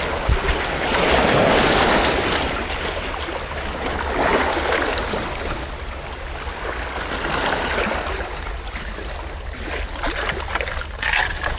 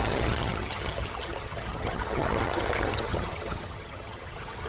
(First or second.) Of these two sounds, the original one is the first